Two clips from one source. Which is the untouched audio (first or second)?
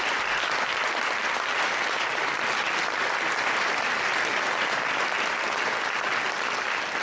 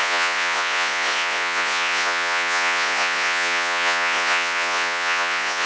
first